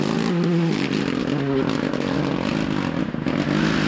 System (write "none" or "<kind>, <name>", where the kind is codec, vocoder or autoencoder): none